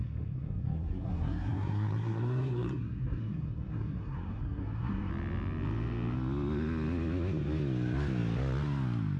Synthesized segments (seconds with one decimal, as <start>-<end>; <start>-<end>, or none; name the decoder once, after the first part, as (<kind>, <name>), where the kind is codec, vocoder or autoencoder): 0.0-5.1 (codec, SNAC)